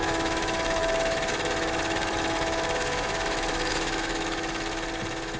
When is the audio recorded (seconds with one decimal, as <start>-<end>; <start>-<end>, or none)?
none